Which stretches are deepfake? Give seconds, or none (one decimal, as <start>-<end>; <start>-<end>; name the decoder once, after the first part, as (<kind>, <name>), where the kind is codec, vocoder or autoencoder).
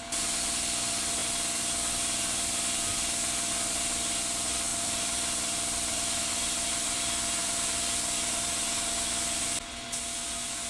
4.7-7.0 (vocoder, BigVGAN v2); 7.4-8.5